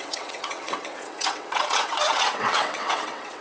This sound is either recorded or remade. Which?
remade